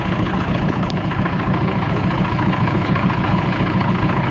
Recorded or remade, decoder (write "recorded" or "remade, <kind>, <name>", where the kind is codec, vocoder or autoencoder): remade, codec, HILCodec